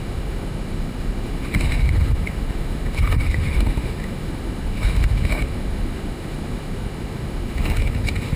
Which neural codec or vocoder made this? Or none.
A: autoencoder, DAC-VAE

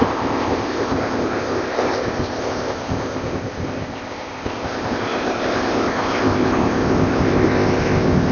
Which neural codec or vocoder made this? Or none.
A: codec, ZipCodec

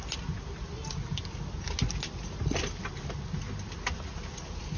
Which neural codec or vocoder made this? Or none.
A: none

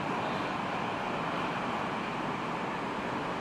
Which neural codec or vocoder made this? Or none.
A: none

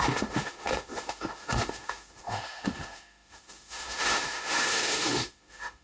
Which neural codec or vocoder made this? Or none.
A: autoencoder, DAC-VAE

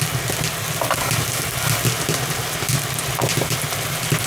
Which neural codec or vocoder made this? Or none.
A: none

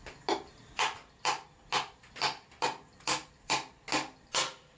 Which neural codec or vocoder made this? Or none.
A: none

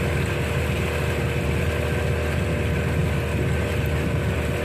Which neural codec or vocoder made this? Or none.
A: none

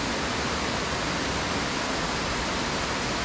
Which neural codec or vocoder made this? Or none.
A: none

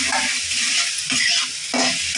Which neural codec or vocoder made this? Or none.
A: none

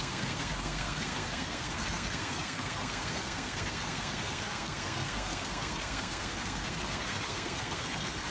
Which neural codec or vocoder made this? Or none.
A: codec, SNAC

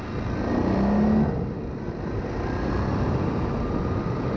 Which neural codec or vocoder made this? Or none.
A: none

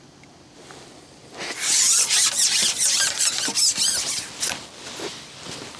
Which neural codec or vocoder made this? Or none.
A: none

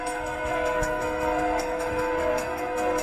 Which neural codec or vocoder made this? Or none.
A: codec, SNAC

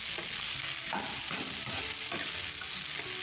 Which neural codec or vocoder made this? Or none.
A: none